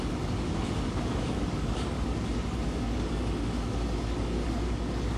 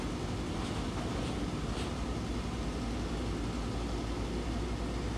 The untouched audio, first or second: second